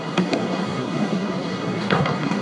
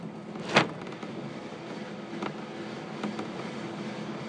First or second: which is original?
second